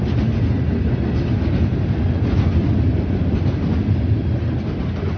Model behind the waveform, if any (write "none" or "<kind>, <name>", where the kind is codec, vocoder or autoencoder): none